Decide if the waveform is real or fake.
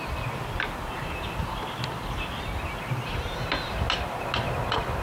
real